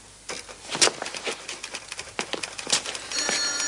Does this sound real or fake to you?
real